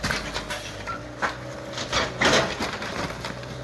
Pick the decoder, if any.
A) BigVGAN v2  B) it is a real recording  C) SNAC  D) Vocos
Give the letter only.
B